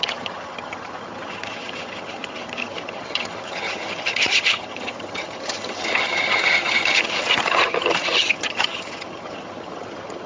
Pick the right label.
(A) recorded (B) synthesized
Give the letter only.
B